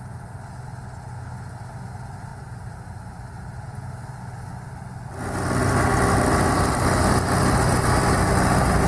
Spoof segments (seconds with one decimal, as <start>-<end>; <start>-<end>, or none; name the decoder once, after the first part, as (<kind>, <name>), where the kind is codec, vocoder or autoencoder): 2.3-3.9 (vocoder, BigVGAN v2)